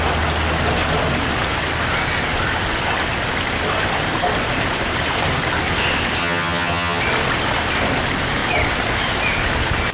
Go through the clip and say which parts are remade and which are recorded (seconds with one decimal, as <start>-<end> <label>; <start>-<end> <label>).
0.0-6.2 recorded; 6.2-7.0 remade; 7.0-9.9 recorded

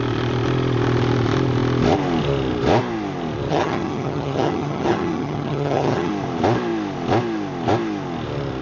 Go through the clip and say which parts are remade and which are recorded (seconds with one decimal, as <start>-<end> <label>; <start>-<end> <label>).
0.0-3.5 recorded; 3.5-6.1 remade; 6.1-8.6 recorded

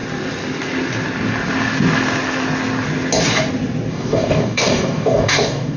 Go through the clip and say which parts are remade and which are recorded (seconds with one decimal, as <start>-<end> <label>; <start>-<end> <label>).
0.0-3.9 recorded; 3.9-5.8 remade

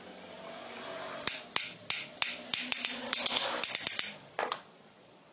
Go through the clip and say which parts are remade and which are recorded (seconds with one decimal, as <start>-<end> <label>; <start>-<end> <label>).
0.0-2.7 recorded; 2.7-3.5 remade; 3.5-4.2 recorded; 4.2-5.3 remade

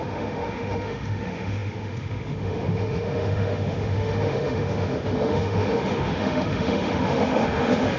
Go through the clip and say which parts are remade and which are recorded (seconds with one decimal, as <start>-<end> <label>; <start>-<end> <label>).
0.0-8.0 remade

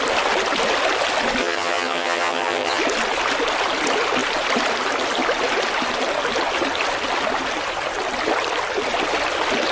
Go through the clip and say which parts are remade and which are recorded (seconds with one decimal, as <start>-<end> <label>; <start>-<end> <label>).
0.0-1.4 recorded; 1.4-2.8 remade; 2.8-9.7 recorded

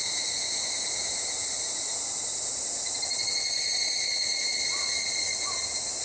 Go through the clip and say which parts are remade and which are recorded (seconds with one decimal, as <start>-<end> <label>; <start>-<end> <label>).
0.0-4.5 recorded; 4.5-5.5 remade; 5.5-6.0 recorded

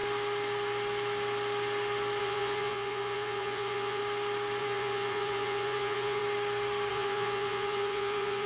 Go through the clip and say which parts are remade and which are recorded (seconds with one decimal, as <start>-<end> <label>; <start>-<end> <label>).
0.0-2.2 recorded; 2.2-4.0 remade; 4.0-4.6 recorded; 4.6-6.2 remade; 6.2-6.9 recorded; 6.9-8.5 remade